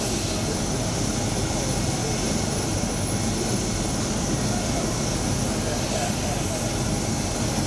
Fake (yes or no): no